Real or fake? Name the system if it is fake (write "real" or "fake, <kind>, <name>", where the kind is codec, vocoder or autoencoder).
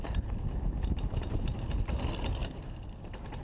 real